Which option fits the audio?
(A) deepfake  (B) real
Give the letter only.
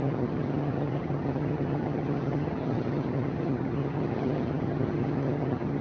A